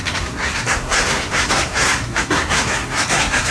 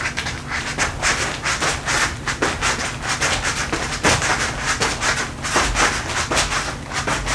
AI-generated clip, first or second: first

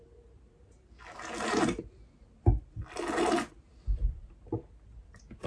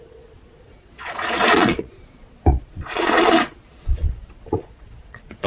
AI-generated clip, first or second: second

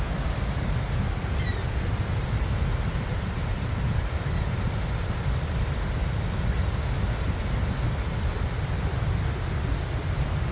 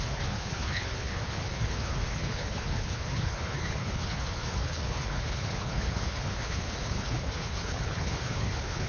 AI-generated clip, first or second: second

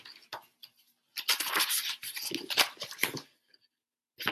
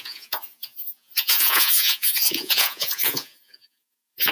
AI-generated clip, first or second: second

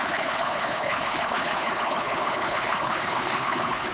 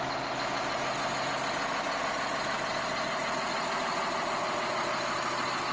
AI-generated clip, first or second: first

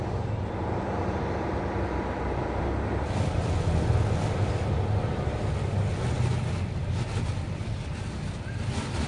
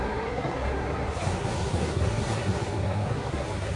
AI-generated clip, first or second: second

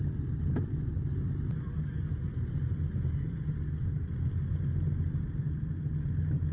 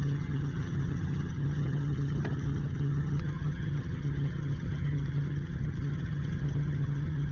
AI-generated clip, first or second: second